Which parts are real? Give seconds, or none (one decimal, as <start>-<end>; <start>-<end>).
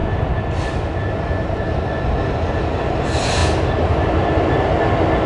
0.0-5.3